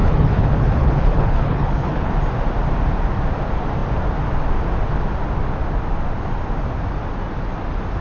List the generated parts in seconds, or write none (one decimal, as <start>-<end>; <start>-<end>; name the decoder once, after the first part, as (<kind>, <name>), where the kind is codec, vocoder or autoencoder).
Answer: 0.0-2.1 (codec, HILCodec)